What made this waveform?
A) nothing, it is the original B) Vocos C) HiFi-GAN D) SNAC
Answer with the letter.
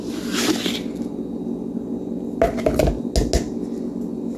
A